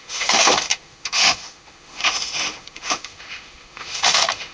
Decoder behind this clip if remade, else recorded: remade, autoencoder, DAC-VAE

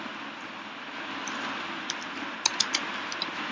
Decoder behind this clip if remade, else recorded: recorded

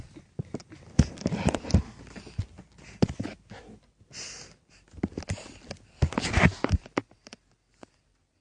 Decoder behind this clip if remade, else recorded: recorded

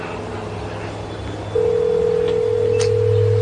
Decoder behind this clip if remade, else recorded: recorded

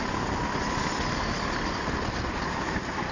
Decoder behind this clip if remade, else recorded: recorded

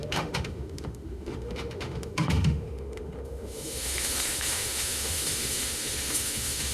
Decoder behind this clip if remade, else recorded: remade, autoencoder, DAC-VAE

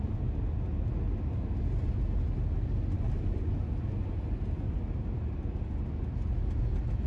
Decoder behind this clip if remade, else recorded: recorded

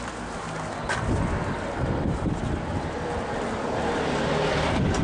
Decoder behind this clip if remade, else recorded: recorded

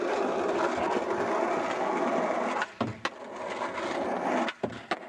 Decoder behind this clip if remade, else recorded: recorded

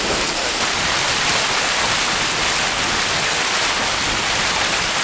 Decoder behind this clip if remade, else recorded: recorded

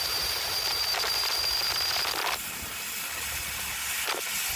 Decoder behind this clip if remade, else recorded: recorded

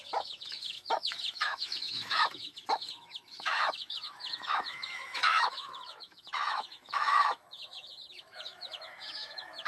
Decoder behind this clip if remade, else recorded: remade, autoencoder, DAC-VAE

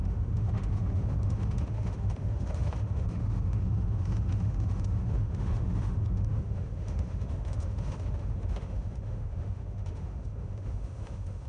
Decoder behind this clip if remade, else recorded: remade, autoencoder, DAC-VAE